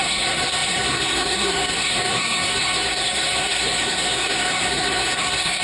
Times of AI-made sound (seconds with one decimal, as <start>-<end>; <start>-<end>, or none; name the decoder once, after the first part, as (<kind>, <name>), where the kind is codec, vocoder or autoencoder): 0.0-5.6 (codec, SNAC)